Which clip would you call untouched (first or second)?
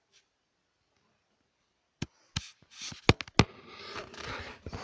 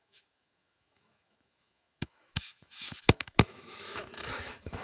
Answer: first